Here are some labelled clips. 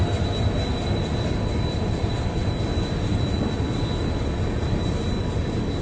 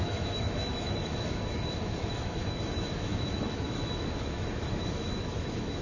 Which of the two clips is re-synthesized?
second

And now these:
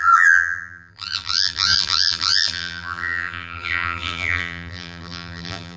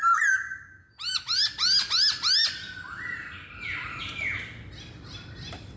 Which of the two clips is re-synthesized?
first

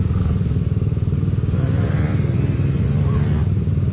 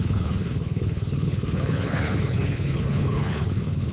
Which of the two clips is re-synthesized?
second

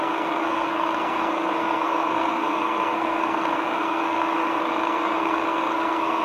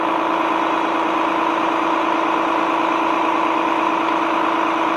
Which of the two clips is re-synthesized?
first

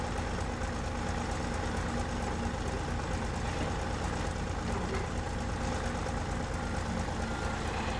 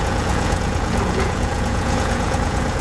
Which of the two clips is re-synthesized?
second